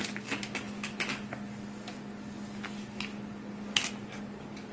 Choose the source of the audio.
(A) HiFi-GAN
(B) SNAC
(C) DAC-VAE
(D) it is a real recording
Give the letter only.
D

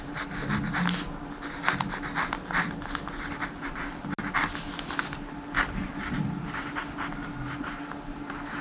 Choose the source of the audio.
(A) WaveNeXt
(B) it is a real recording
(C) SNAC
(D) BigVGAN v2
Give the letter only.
B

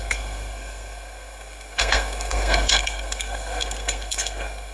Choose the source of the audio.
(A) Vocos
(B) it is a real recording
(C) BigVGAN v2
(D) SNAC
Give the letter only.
D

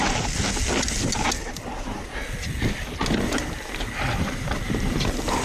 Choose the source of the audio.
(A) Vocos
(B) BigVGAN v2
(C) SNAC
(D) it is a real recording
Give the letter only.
D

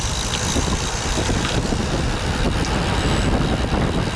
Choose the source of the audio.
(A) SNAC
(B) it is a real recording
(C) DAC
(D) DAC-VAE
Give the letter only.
B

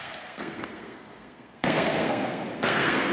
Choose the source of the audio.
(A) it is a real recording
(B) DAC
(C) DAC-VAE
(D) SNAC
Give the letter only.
D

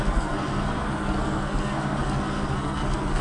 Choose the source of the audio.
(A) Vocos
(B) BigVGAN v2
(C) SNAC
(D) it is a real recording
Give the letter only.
C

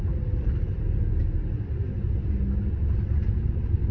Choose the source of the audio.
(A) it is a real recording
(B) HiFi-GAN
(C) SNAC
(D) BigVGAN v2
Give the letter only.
A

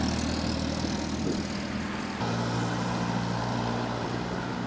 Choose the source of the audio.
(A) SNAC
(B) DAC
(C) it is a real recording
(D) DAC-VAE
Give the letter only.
C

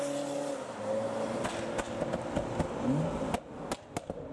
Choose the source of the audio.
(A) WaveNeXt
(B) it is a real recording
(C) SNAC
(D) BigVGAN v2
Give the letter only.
B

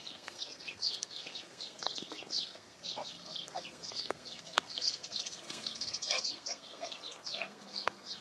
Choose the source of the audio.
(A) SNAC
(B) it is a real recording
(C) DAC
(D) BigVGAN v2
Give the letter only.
A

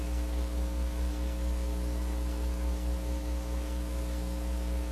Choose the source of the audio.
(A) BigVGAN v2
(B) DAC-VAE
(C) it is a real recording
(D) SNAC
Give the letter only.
D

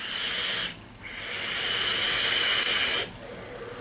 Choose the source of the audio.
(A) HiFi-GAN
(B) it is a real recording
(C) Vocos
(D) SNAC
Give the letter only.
B